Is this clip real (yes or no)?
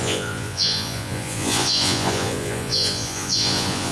no